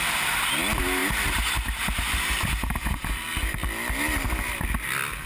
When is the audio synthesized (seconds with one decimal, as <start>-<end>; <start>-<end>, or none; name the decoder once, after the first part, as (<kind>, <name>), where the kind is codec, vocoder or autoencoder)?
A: none